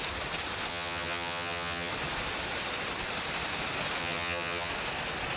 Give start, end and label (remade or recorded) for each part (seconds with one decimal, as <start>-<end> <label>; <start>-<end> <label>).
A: 0.0-0.7 recorded; 0.7-1.9 remade; 1.9-4.0 recorded; 4.0-4.7 remade; 4.7-5.4 recorded